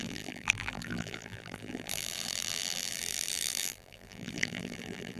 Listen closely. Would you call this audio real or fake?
fake